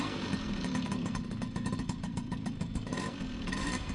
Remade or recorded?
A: remade